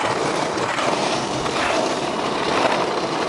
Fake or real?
fake